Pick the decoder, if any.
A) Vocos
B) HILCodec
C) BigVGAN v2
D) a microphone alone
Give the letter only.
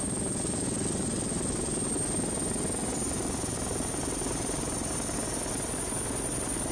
D